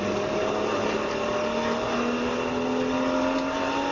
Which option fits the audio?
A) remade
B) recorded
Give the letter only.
B